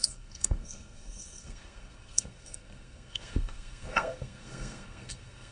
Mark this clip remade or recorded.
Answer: remade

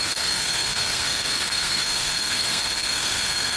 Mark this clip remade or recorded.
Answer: remade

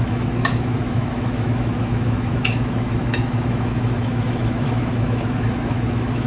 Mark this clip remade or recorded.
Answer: remade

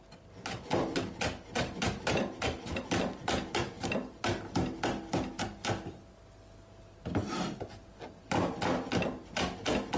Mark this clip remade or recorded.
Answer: recorded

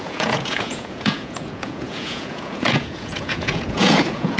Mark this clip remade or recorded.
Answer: remade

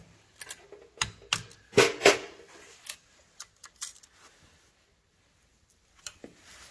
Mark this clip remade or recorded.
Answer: recorded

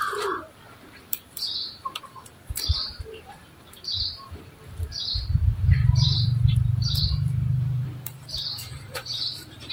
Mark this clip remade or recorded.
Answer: remade